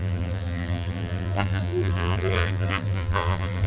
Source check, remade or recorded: remade